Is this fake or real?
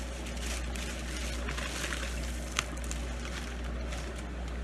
real